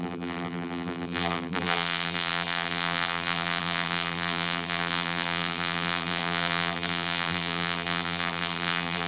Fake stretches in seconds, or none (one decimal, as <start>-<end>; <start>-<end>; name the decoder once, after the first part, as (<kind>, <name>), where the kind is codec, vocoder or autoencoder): 0.0-9.1 (vocoder, BigVGAN v2)